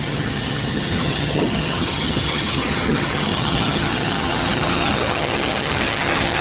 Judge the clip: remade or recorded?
remade